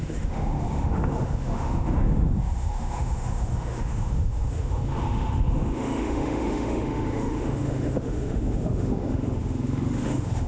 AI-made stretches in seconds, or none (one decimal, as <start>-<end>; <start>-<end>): 0.0-10.5